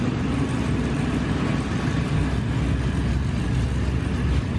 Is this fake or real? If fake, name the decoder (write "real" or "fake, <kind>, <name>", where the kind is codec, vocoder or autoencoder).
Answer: real